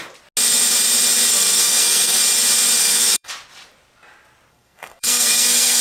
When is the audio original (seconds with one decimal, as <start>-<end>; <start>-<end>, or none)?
0.0-1.3; 2.2-2.8; 3.3-4.5

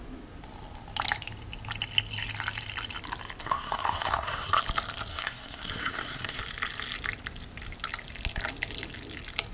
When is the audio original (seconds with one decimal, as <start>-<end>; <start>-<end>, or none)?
0.0-3.4; 4.6-5.1; 6.4-9.5

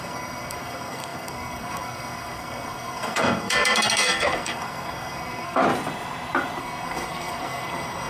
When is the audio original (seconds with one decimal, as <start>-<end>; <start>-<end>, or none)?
5.6-6.6

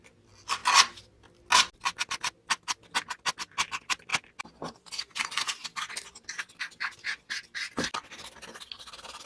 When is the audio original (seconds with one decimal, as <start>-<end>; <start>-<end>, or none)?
0.0-9.3

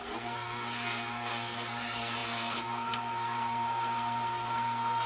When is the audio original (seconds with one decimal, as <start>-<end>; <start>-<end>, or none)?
none

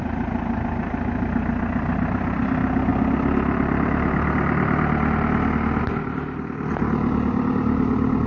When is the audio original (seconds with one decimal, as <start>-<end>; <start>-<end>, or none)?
0.0-8.3